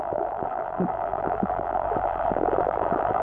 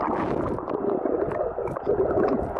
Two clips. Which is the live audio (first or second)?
second